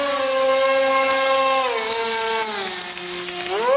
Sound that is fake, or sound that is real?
real